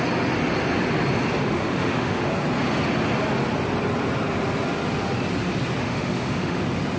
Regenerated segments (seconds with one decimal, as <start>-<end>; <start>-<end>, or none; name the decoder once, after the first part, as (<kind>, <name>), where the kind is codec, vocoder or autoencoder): 1.4-2.3 (autoencoder, DAC-VAE); 5.8-6.6